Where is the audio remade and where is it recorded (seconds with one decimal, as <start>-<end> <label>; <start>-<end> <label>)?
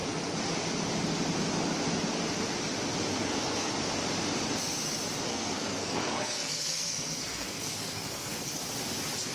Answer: 0.0-3.1 recorded; 3.1-3.7 remade; 3.7-5.3 recorded; 5.3-8.5 remade; 8.5-9.3 recorded